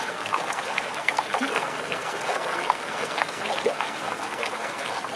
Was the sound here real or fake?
fake